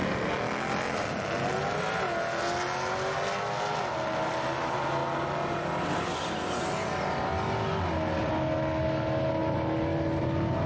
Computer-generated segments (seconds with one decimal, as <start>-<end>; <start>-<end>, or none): 9.4-10.2